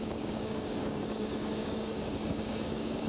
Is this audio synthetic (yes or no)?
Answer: yes